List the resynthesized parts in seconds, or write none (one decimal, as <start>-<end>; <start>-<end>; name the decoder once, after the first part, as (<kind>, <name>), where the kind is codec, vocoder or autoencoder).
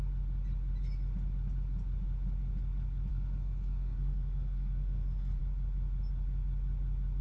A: 3.1-5.4 (codec, SNAC)